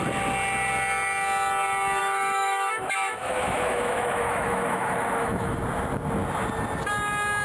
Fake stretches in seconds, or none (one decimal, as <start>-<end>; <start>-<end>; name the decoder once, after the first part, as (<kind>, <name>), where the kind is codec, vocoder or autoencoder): 2.0-5.6 (autoencoder, DAC-VAE)